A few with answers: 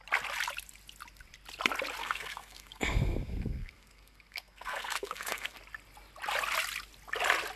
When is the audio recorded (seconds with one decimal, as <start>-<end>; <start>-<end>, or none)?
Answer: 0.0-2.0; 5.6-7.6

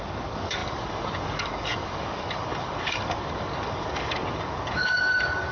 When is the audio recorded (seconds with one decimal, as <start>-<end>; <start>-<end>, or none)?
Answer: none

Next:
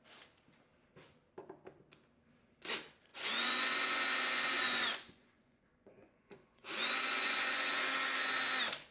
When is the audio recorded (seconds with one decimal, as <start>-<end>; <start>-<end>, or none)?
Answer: 0.0-3.1; 7.8-8.9

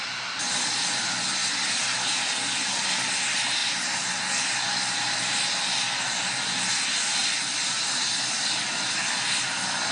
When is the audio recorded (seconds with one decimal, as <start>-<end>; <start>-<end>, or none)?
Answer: 0.0-1.4; 2.7-7.2; 8.6-9.9

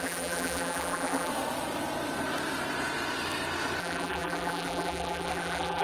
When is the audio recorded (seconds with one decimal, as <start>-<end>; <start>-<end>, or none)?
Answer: 1.3-3.8

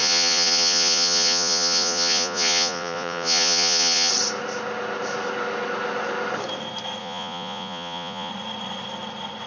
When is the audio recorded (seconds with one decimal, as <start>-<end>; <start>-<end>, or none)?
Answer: 4.1-7.0; 8.3-9.5

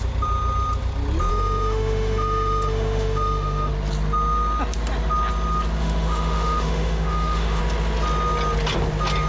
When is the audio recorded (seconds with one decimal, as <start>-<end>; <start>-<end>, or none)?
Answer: 0.0-1.3; 3.7-5.8; 7.6-9.3